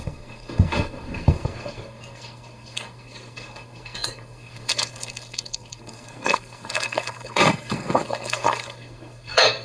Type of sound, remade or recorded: remade